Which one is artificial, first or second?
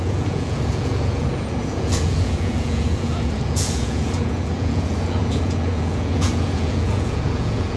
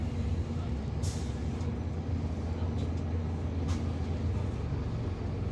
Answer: first